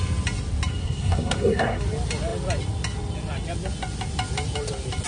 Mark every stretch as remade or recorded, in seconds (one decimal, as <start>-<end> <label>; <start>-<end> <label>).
0.0-0.8 recorded; 0.8-1.8 remade; 1.8-5.1 recorded